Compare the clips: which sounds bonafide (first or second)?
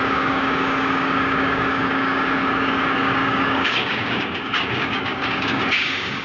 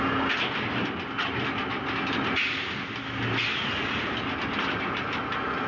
second